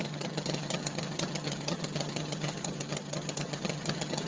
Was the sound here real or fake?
fake